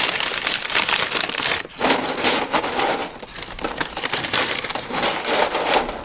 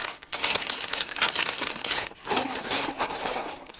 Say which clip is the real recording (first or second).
first